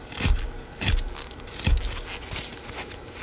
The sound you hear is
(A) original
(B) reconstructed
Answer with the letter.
A